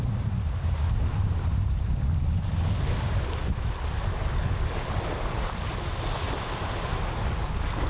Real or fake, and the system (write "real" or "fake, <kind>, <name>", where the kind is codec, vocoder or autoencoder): real